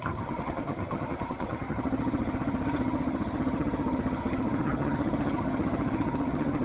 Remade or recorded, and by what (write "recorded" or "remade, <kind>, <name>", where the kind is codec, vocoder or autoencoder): remade, vocoder, HiFi-GAN